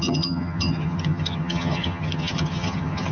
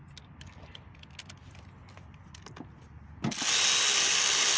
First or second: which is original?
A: second